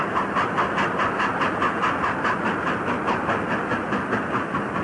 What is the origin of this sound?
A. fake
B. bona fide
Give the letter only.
B